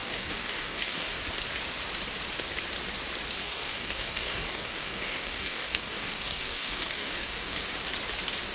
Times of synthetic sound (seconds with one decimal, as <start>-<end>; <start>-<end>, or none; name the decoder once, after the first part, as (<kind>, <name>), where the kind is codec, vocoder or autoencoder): 0.0-1.2 (codec, DAC); 3.4-7.6